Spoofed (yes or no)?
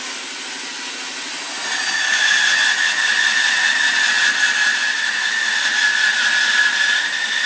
no